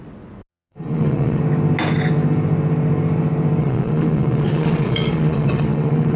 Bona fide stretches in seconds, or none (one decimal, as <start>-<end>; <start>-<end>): 0.0-0.5; 1.4-3.6